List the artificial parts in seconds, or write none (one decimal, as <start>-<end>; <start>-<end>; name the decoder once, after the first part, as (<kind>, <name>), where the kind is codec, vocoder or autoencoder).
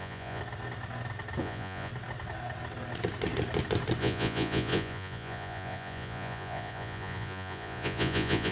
0.0-0.4 (vocoder, Vocos); 1.4-1.9; 4.0-8.5